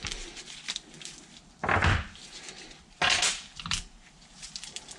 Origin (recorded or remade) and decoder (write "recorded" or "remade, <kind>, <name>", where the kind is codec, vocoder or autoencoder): recorded